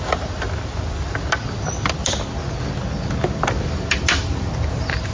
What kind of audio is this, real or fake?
real